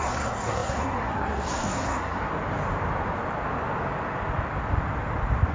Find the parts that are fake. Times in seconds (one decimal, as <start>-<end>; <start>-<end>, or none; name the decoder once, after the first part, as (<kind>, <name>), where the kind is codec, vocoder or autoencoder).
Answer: 0.0-2.3 (codec, SNAC)